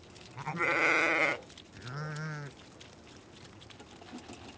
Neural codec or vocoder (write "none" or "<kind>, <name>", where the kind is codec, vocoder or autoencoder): none